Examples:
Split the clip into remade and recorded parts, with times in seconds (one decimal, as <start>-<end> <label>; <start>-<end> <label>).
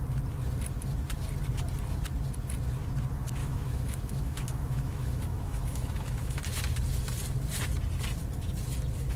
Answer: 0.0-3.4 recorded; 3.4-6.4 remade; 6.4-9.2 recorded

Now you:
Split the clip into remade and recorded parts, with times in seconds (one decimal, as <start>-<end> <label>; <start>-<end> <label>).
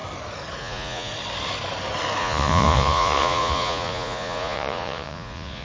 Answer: 0.0-0.6 recorded; 0.6-1.1 remade; 1.1-2.2 recorded; 2.2-5.6 remade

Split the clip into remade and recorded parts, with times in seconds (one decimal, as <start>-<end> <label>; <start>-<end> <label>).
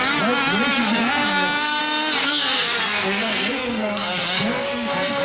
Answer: 0.0-0.8 recorded; 0.8-1.8 remade; 1.8-2.2 recorded; 2.2-5.2 remade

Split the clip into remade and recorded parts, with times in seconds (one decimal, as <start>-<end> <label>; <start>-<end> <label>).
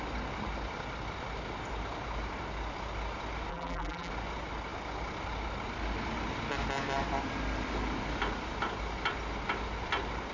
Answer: 0.0-3.5 recorded; 3.5-4.1 remade; 4.1-10.3 recorded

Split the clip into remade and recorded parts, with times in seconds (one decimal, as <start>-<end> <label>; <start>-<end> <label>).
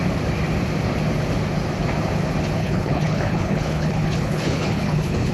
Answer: 0.0-2.6 recorded; 2.6-5.3 remade